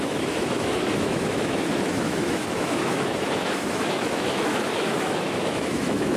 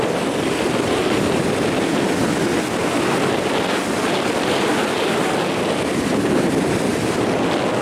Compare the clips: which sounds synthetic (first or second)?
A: first